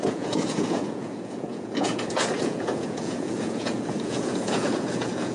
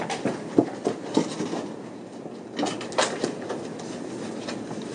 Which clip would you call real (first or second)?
second